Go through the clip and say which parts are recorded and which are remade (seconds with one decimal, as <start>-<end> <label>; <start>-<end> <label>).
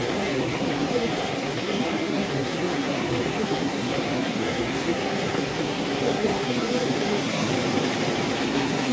0.0-7.5 remade; 7.5-8.4 recorded; 8.4-8.9 remade